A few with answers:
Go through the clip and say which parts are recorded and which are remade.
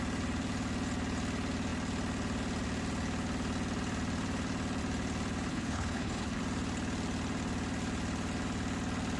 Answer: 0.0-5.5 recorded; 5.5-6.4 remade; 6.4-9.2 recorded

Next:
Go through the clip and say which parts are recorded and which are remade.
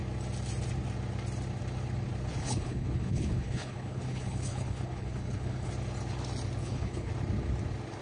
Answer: 0.0-2.4 recorded; 2.4-5.7 remade; 5.7-6.6 recorded; 6.6-7.1 remade; 7.1-8.0 recorded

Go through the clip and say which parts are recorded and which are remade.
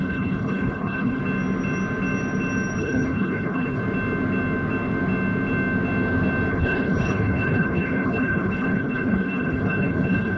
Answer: 0.0-1.2 remade; 1.2-2.8 recorded; 2.8-3.8 remade; 3.8-6.5 recorded; 6.5-10.4 remade